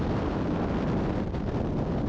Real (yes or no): yes